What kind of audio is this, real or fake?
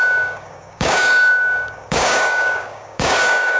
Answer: fake